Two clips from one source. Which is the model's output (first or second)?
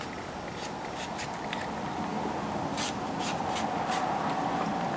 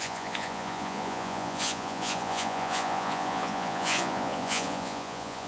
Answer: second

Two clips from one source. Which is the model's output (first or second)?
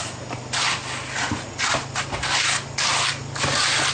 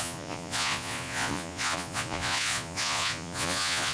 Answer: second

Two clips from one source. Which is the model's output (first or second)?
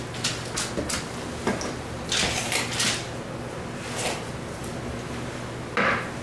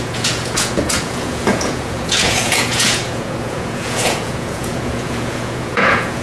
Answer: second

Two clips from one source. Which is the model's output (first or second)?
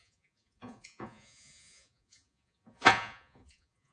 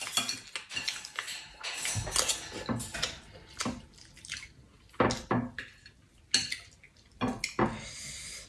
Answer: first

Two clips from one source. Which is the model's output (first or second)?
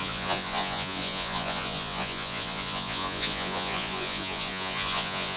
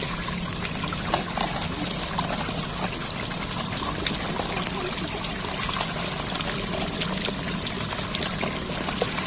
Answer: first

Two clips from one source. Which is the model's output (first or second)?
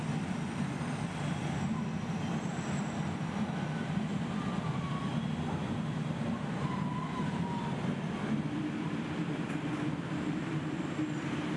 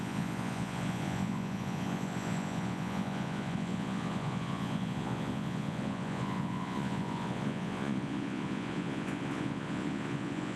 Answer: second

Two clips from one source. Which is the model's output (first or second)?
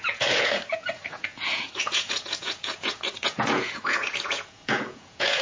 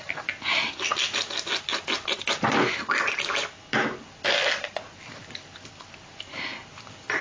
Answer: first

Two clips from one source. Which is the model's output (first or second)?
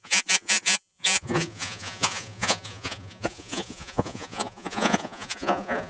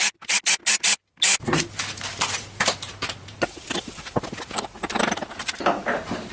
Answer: first